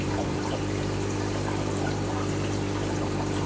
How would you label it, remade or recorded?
remade